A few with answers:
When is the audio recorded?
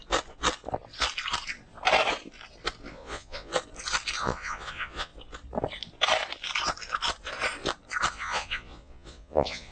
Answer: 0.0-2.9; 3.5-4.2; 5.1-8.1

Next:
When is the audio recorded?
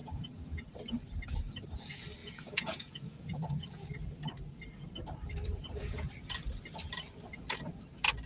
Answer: 0.7-2.2; 3.9-5.5; 6.1-8.3